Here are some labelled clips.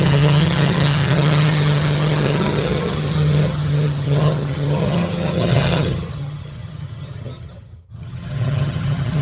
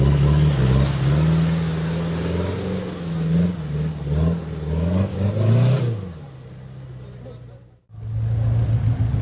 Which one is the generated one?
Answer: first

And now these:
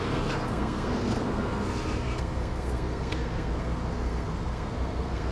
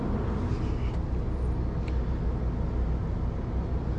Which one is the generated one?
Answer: first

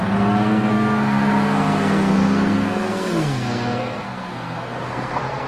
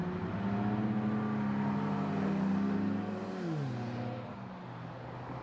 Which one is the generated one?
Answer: first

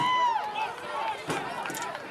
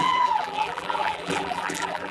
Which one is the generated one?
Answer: second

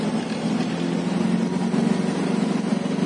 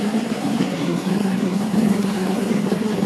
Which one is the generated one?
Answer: second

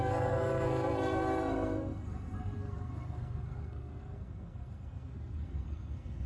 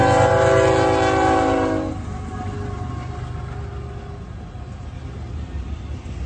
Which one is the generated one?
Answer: first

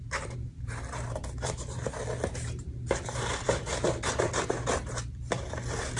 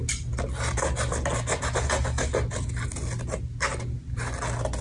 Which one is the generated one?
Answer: first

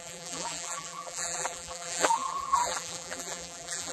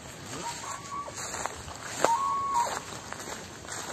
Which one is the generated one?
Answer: first